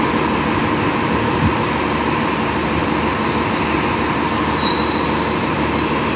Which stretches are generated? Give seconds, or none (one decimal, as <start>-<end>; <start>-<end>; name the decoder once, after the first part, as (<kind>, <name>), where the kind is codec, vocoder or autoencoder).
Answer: none